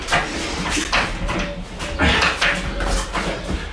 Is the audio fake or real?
real